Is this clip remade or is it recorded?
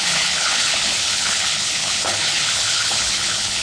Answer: remade